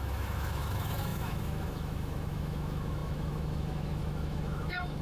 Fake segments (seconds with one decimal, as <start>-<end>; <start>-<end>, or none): 0.0-5.0